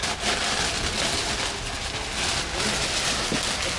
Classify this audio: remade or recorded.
recorded